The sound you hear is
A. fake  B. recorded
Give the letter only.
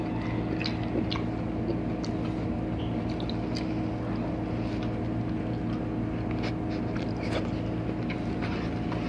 B